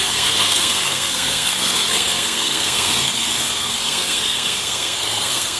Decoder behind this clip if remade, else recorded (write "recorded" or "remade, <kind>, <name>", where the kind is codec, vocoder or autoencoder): remade, codec, SNAC